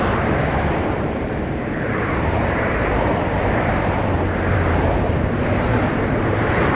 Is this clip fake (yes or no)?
yes